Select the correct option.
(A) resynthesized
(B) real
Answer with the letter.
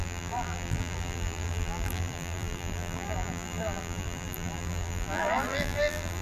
A